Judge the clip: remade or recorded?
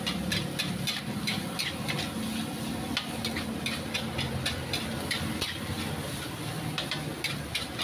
recorded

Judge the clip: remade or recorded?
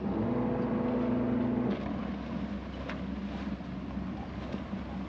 recorded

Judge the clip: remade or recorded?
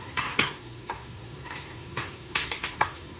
remade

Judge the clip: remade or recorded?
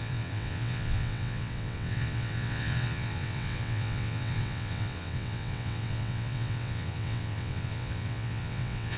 remade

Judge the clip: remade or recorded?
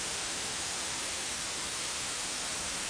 remade